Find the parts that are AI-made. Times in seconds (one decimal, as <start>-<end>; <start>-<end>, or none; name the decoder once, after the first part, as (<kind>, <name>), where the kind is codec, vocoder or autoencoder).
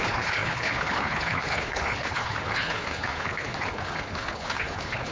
0.0-5.1 (codec, HILCodec)